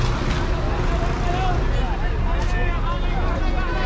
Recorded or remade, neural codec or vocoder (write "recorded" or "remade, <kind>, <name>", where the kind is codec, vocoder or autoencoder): recorded